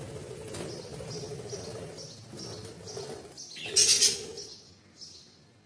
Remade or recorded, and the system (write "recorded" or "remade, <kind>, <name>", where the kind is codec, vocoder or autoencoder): recorded